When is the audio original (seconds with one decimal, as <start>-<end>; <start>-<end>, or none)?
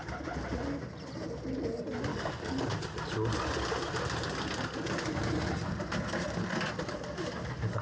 0.0-2.1; 2.8-7.8